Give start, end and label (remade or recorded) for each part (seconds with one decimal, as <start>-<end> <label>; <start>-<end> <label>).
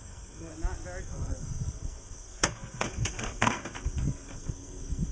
0.0-0.5 remade; 0.5-1.0 recorded; 1.0-5.1 remade